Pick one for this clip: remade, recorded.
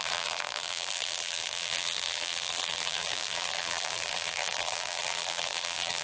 remade